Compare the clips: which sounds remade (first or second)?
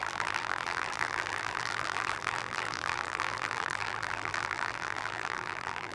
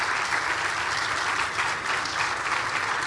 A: first